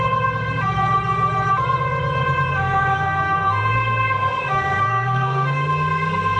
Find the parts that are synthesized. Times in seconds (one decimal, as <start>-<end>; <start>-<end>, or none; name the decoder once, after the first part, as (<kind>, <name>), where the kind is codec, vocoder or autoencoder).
2.5-6.4 (codec, SNAC)